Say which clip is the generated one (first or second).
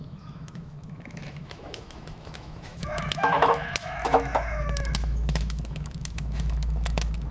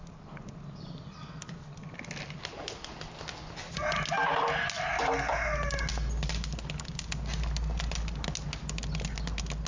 first